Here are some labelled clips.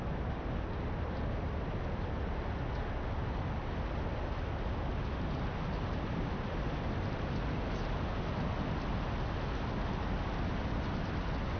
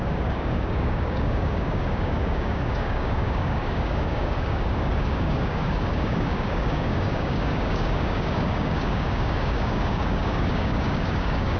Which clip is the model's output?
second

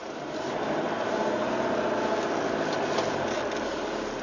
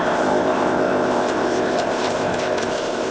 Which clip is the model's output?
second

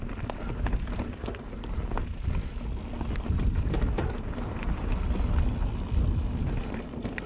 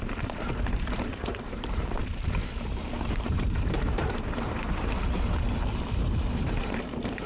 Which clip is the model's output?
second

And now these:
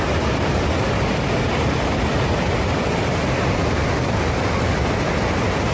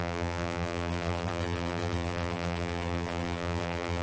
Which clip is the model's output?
second